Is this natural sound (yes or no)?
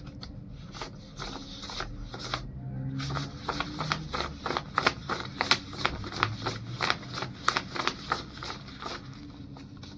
yes